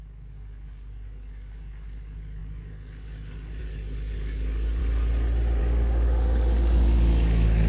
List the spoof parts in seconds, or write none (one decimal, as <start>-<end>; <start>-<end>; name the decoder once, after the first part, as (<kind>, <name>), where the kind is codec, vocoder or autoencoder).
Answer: 0.0-4.8 (codec, DAC); 5.6-7.7